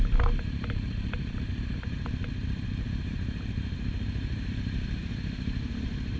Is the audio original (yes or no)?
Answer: no